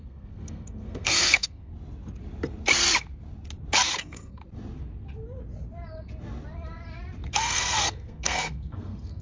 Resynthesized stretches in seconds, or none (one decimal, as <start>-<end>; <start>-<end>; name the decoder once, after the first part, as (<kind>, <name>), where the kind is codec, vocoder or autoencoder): 0.0-1.7 (codec, SNAC); 4.0-4.4; 7.3-9.2